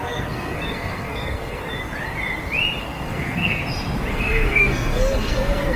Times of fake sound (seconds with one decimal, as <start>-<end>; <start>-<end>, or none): 0.0-1.6; 2.8-3.6; 4.1-5.8